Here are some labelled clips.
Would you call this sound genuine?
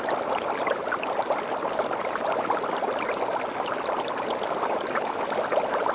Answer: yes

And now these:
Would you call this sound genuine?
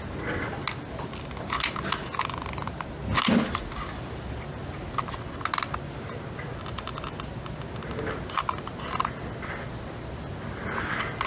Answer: yes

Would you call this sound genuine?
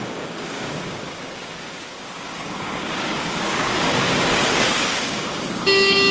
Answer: no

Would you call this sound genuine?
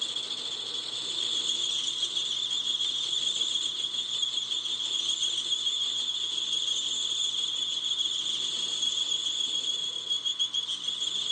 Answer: no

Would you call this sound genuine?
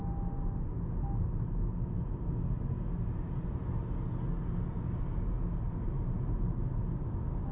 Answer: yes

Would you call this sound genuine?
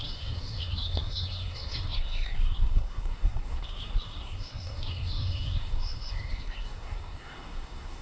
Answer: no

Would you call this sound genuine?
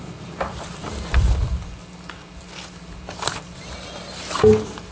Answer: yes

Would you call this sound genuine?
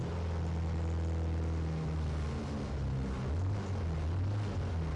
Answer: yes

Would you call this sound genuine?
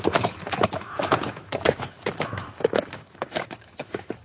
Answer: no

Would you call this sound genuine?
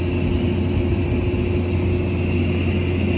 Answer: yes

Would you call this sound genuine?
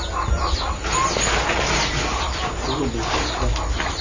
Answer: yes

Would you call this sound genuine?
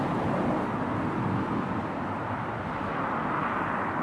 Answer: yes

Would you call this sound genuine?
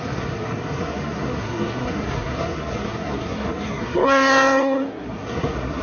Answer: no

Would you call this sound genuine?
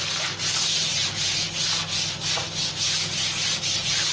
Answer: yes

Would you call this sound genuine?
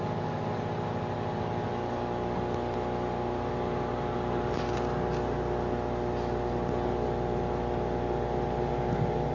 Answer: yes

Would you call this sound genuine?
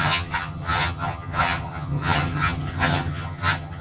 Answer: no